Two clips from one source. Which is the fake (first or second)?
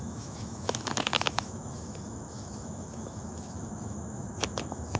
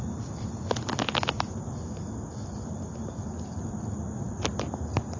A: first